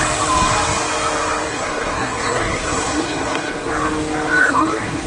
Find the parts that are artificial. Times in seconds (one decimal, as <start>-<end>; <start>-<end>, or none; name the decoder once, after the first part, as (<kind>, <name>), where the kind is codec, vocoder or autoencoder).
1.5-3.7 (codec, SNAC); 4.4-5.1